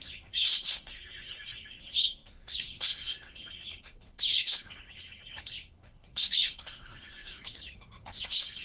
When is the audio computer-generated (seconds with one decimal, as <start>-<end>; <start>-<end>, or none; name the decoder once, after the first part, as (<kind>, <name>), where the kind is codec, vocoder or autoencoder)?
0.0-8.6 (codec, SNAC)